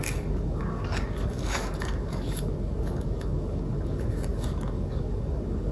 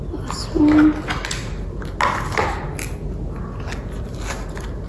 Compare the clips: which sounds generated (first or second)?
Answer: first